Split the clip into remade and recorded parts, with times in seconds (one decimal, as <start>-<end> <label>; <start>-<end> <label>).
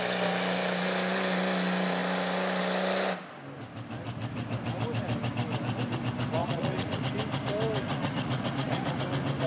0.0-6.4 recorded; 6.4-7.0 remade; 7.0-7.9 recorded; 7.9-9.0 remade; 9.0-9.5 recorded